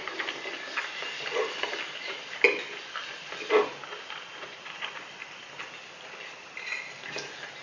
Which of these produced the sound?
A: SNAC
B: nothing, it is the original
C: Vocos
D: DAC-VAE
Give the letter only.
B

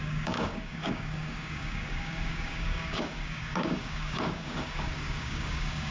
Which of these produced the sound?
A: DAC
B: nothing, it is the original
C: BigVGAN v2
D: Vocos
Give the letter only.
A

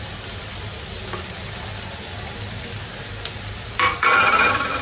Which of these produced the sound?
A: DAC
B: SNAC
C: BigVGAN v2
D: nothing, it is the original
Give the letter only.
D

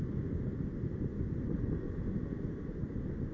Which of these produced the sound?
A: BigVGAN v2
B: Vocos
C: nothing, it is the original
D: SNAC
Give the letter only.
C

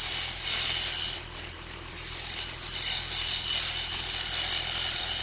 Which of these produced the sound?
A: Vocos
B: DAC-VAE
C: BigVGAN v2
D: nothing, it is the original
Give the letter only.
D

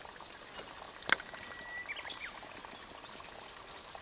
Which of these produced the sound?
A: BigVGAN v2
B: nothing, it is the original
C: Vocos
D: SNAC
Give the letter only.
B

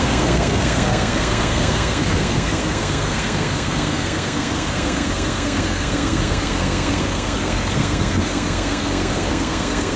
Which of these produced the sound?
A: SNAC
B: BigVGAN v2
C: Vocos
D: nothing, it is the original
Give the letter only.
A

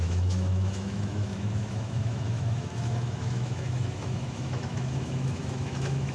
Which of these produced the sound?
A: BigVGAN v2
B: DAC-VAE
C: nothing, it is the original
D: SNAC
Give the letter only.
B